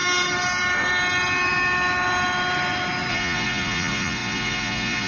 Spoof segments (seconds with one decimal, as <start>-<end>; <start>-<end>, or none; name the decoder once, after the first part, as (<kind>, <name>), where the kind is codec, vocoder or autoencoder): 3.1-5.1 (vocoder, Vocos)